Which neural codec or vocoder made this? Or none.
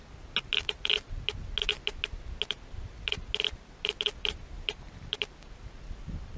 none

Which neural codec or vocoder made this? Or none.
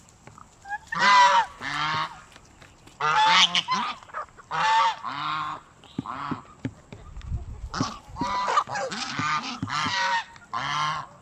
none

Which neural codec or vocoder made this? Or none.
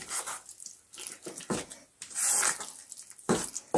none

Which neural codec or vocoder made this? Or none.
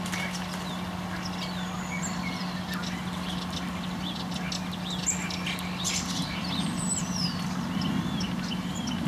none